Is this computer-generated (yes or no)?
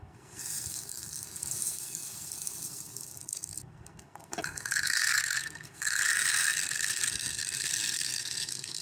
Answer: yes